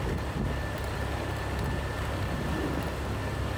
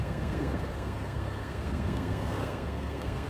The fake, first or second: second